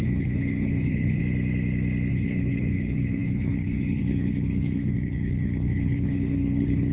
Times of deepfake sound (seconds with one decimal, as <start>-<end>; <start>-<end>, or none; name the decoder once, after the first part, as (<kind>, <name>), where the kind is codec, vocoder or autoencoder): 0.0-1.2 (codec, HILCodec); 2.1-6.9